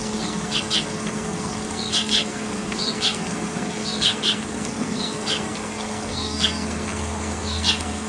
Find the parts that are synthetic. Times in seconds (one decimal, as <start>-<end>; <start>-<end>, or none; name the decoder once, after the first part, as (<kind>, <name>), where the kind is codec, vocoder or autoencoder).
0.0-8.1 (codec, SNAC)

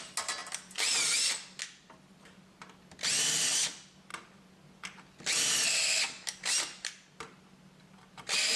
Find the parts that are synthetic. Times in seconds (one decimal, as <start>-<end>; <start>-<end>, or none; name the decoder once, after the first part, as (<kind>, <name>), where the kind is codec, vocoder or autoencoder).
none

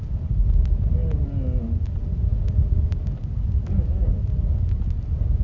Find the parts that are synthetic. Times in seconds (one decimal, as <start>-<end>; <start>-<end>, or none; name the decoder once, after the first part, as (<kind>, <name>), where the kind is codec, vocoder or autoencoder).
none